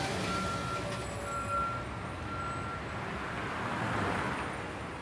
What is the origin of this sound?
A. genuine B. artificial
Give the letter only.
A